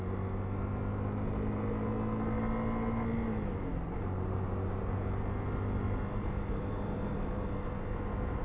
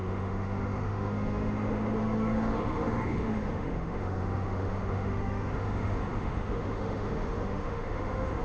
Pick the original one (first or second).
first